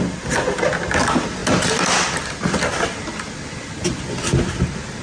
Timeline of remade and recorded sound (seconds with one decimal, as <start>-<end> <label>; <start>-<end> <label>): 0.0-5.0 recorded